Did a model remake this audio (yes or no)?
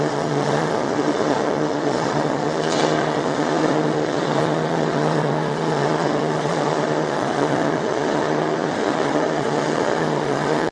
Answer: yes